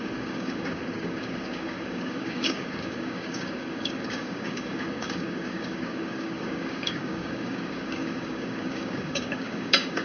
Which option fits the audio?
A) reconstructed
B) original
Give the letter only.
A